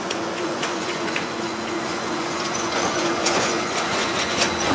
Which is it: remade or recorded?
remade